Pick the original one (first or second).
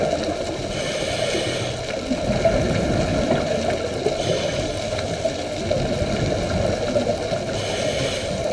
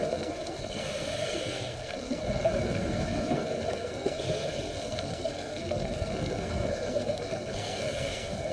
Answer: first